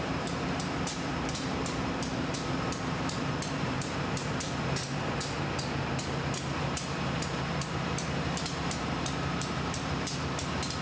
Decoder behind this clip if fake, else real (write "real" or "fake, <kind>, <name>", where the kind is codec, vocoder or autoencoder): fake, vocoder, BigVGAN v2